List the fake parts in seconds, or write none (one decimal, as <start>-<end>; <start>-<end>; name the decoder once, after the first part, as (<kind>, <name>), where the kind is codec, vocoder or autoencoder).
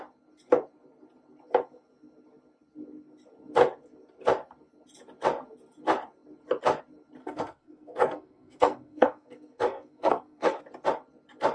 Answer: 7.2-10.6 (codec, SNAC)